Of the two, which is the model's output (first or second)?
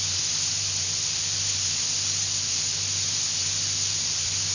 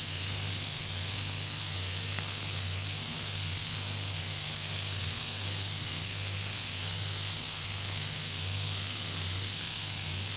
second